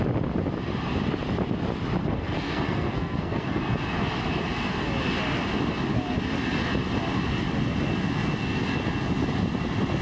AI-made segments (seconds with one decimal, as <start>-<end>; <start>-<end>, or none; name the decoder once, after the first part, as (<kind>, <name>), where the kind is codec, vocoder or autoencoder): 2.0-3.6 (codec, SNAC)